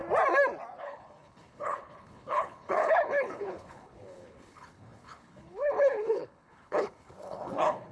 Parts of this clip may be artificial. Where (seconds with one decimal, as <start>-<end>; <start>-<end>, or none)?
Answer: 0.8-7.9